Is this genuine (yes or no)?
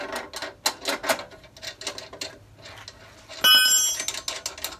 yes